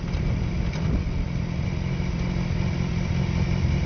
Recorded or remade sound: recorded